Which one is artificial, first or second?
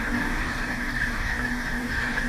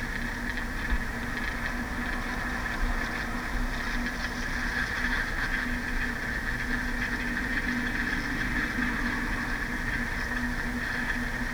first